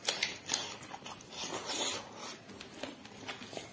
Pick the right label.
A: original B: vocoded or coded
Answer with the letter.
A